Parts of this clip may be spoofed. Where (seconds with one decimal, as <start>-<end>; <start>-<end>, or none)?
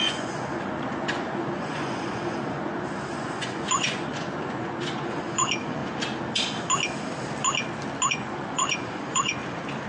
0.0-5.8; 8.1-9.4